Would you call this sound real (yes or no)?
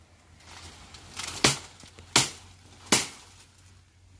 yes